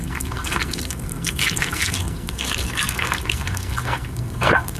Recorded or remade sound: remade